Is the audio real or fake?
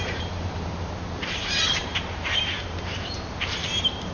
fake